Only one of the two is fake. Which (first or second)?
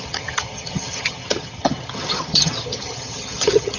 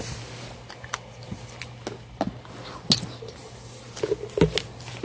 first